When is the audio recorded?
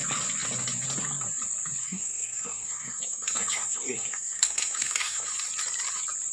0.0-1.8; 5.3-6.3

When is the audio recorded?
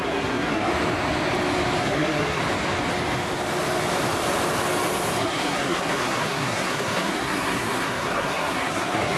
0.7-1.8; 2.4-5.2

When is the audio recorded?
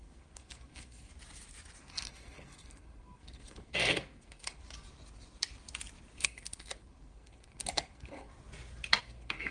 1.1-1.8; 4.6-6.2; 8.3-9.0